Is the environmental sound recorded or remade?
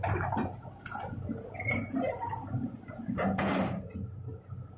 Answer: recorded